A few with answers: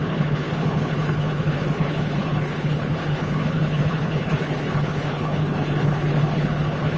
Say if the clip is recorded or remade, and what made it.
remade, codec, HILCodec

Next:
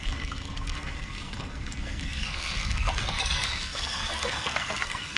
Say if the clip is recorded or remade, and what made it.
remade, codec, SNAC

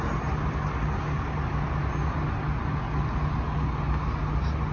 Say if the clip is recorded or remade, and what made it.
recorded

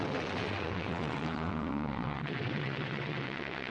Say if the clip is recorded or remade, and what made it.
remade, vocoder, WaveNeXt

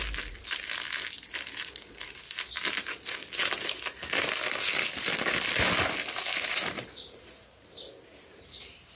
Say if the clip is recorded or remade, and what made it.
recorded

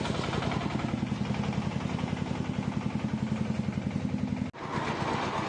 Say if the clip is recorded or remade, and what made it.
recorded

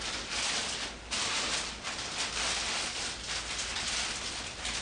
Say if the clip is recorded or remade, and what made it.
recorded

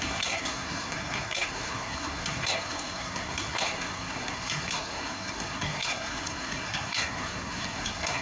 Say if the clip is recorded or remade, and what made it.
remade, codec, SNAC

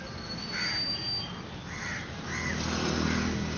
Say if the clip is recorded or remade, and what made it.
recorded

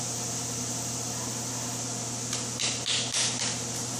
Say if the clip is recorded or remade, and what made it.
recorded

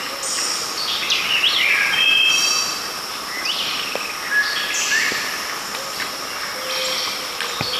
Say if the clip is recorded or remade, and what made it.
recorded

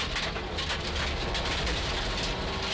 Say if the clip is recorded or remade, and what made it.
recorded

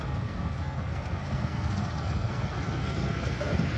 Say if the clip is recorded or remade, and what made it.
remade, codec, SNAC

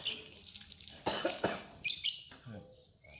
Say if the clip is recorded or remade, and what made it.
recorded